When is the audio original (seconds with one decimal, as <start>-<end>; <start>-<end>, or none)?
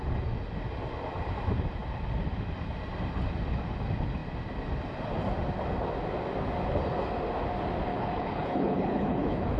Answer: 0.0-7.9